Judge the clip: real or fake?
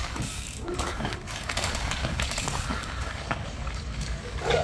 fake